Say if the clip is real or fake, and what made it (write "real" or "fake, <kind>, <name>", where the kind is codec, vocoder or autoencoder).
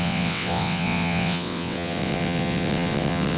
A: fake, vocoder, WaveNeXt